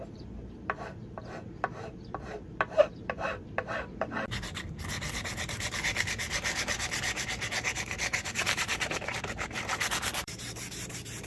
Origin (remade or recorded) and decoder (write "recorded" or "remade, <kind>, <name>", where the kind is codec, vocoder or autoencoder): remade, vocoder, BigVGAN v2